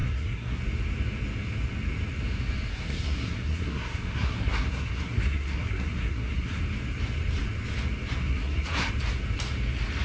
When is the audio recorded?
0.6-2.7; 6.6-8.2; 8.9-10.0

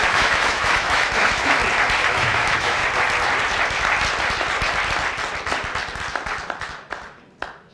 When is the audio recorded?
1.6-2.1; 2.8-7.7